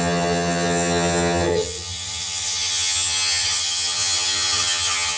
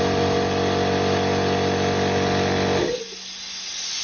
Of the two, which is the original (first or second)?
second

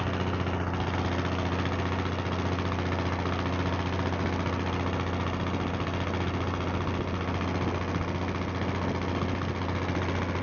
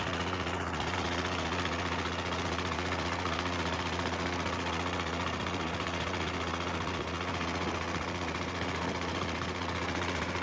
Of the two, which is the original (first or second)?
first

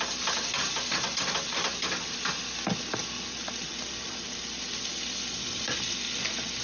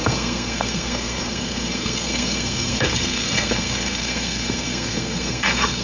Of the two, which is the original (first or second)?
first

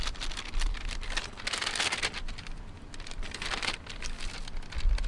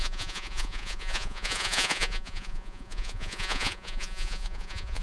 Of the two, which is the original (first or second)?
first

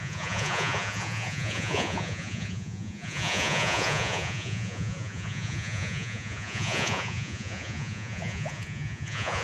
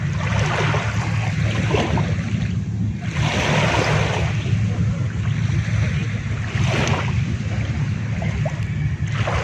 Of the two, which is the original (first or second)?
second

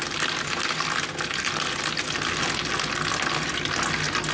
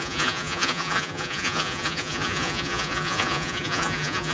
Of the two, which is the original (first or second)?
first